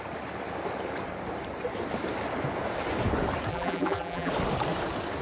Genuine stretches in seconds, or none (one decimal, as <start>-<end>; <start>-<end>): 0.0-3.5; 4.3-5.2